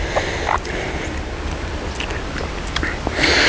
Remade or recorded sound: recorded